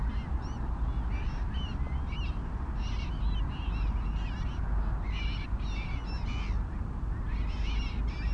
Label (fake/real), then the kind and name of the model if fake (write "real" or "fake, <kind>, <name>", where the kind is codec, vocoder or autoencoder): real